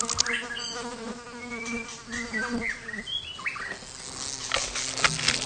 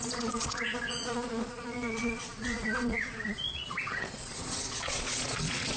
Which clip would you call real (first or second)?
first